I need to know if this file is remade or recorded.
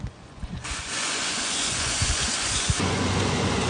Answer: remade